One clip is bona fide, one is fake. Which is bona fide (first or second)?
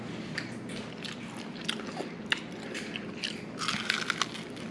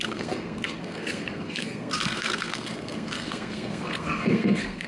first